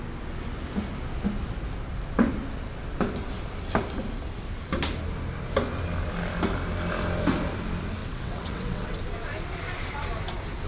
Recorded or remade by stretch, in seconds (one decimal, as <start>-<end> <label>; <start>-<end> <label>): 0.0-8.0 recorded; 8.0-9.0 remade; 9.0-10.7 recorded

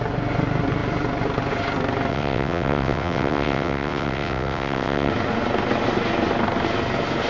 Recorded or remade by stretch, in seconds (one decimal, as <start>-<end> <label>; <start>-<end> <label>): 0.0-2.1 recorded; 2.1-5.1 remade; 5.1-7.3 recorded

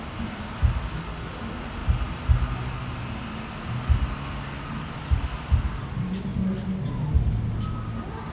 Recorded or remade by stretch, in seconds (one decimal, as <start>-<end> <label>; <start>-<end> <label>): 0.0-8.3 recorded

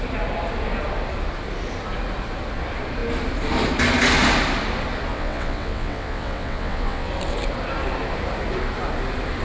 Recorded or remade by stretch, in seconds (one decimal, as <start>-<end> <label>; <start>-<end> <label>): 0.0-5.1 recorded; 5.1-7.1 remade; 7.1-9.4 recorded

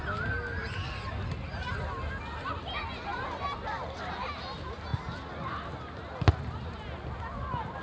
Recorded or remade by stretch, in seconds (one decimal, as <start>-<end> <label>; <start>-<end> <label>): 0.0-7.8 recorded

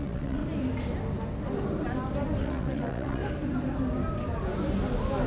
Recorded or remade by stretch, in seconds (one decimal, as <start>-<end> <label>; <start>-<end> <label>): 0.0-0.4 remade; 0.4-2.4 recorded; 2.4-3.2 remade; 3.2-5.3 recorded

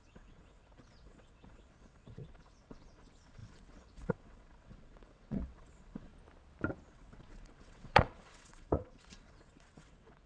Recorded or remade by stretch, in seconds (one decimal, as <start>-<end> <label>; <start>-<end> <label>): 0.0-6.1 remade; 6.1-6.9 recorded; 6.9-10.3 remade